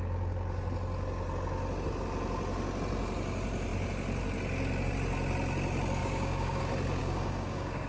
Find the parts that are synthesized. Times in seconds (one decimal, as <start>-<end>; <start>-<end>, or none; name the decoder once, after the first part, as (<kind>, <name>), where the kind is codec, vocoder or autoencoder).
6.0-6.6 (codec, DAC); 7.0-7.9